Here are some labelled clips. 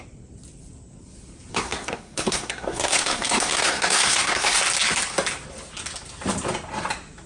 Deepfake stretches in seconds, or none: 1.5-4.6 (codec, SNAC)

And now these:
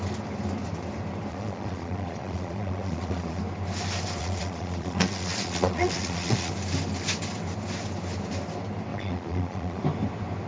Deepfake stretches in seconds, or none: 1.3-3.4 (vocoder, Vocos); 4.2-6.5; 8.9-9.8